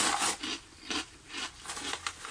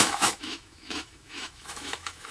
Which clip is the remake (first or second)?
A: second